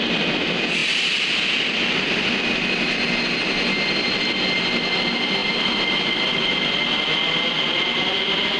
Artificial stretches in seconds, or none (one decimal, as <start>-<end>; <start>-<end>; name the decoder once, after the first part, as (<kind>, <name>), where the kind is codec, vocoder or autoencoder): none